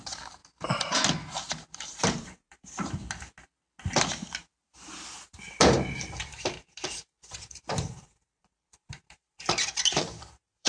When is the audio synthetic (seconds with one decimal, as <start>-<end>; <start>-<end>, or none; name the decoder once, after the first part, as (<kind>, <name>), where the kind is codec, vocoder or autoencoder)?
0.0-0.4 (vocoder, BigVGAN v2); 2.0-3.0; 5.6-6.3; 7.5-10.7